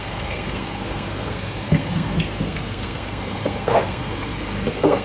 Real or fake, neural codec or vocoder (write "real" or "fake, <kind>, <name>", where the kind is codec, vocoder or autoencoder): fake, codec, SNAC